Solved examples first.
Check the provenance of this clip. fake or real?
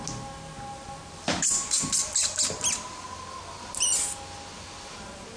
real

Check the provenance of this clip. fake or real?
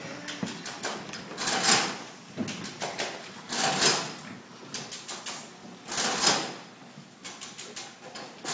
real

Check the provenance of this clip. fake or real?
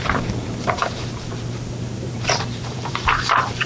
fake